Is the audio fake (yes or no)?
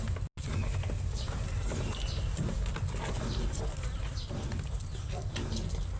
no